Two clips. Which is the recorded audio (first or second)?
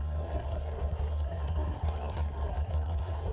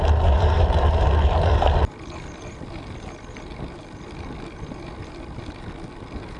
second